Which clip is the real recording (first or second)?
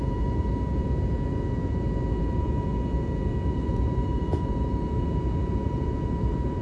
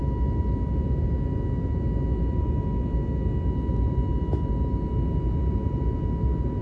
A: second